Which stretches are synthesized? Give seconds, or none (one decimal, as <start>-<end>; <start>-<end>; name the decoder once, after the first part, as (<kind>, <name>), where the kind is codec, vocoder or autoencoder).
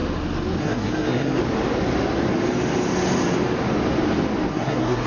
0.6-1.4 (codec, SNAC); 4.5-5.1